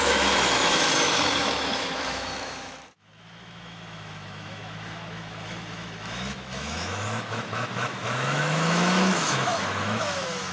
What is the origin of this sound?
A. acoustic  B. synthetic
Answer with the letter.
B